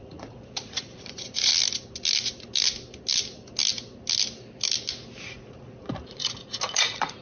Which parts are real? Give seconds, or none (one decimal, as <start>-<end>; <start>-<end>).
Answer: 1.5-5.2